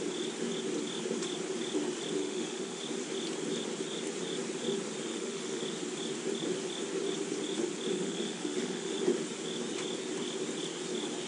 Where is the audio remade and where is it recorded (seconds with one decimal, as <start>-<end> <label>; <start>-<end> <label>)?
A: 0.0-2.2 recorded; 2.2-2.8 remade; 2.8-5.1 recorded; 5.1-5.6 remade; 5.6-7.9 recorded; 7.9-9.0 remade; 9.0-11.3 recorded